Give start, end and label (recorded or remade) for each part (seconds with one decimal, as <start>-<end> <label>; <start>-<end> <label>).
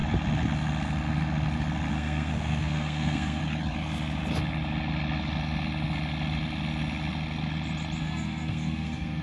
0.0-1.9 recorded; 1.9-3.4 remade; 3.4-8.0 recorded; 8.0-9.2 remade